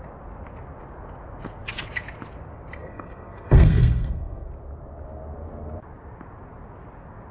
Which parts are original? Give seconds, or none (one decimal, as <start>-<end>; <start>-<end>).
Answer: 0.0-2.8; 4.5-7.3